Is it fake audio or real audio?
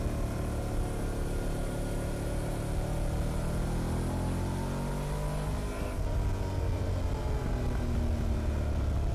real